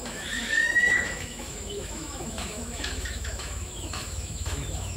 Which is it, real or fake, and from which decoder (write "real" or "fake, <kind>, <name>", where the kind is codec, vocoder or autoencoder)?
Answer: fake, autoencoder, DAC-VAE